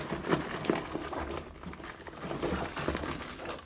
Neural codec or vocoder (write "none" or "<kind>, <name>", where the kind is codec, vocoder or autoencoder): none